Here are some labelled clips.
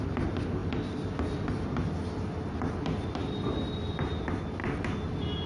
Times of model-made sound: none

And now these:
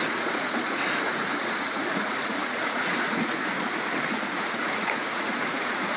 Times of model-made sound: 0.0-6.0 (vocoder, Vocos)

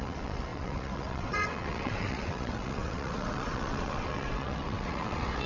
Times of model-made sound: 0.0-5.5 (vocoder, WaveNeXt)

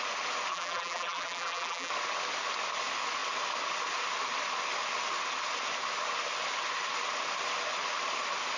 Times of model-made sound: 0.5-1.9 (vocoder, BigVGAN v2)